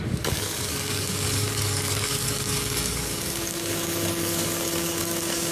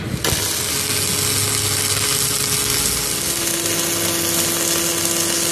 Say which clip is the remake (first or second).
first